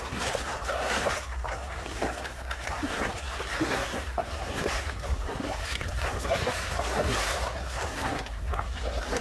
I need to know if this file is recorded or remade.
remade